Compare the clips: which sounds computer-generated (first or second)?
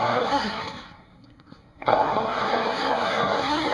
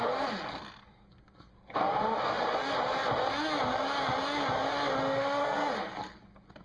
first